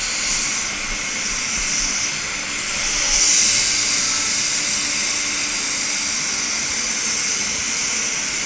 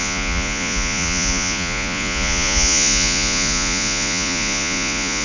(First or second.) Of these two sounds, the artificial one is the second